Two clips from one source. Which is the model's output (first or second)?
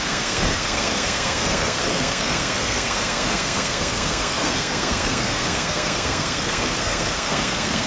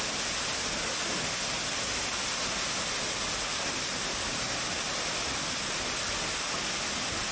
first